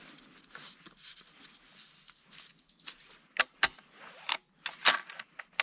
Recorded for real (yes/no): yes